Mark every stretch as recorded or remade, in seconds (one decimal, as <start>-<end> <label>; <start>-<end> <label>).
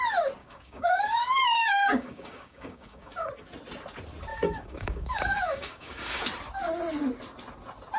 0.0-0.4 recorded; 0.4-3.3 remade; 3.3-4.3 recorded; 4.3-6.2 remade; 6.2-8.0 recorded